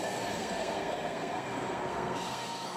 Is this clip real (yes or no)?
no